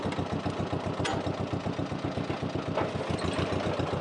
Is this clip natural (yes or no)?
yes